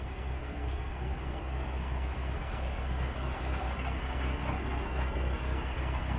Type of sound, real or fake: fake